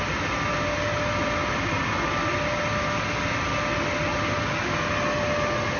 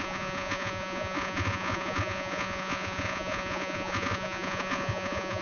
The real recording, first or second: first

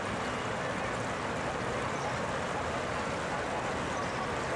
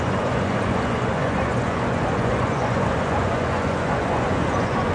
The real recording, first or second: first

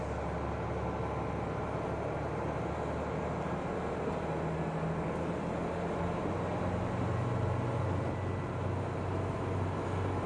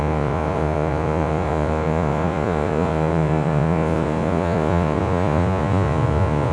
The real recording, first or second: first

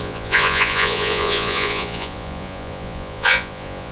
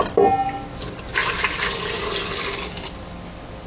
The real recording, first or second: second